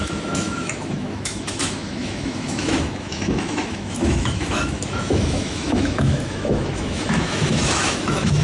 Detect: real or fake fake